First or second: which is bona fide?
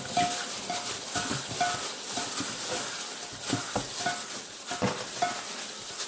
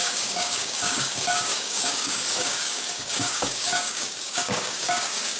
first